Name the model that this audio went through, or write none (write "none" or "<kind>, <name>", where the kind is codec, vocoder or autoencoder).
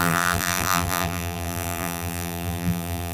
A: vocoder, BigVGAN v2